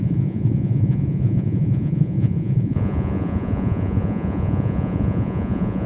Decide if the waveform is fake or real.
fake